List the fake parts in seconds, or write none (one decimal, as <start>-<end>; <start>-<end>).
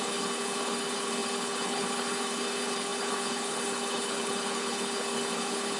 0.0-5.8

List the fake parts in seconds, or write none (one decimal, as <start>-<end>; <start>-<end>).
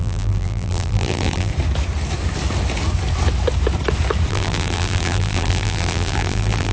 0.0-1.5; 4.3-6.7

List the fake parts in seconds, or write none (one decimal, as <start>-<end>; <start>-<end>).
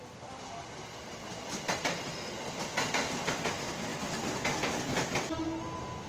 none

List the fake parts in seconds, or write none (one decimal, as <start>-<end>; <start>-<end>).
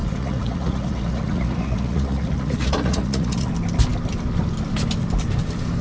0.0-3.5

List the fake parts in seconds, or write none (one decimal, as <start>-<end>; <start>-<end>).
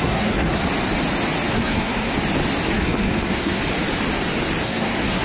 0.0-0.6; 1.5-2.1; 2.7-3.6; 4.6-5.2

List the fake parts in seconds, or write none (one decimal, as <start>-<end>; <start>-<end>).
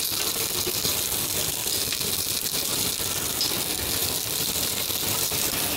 none